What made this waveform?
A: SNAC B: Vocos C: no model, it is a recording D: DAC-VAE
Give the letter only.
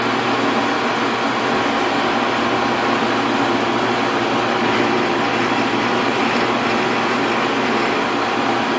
C